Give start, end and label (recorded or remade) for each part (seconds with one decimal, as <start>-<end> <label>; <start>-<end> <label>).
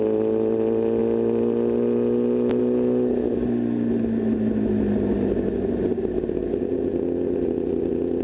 0.0-8.2 recorded